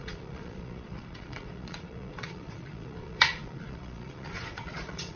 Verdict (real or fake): fake